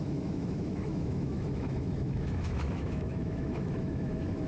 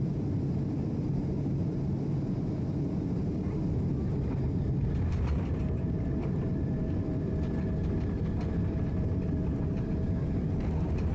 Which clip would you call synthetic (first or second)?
first